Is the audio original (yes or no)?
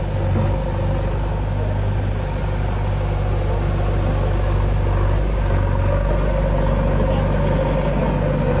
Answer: yes